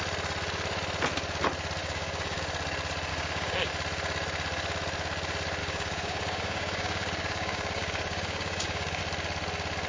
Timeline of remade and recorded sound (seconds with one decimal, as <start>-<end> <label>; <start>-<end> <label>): 0.0-1.8 recorded; 1.8-2.4 remade; 2.4-3.1 recorded; 3.1-3.7 remade; 3.7-5.6 recorded; 5.6-9.0 remade; 9.0-9.9 recorded